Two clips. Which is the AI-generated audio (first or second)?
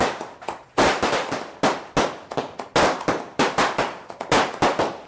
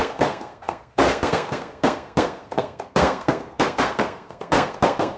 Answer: second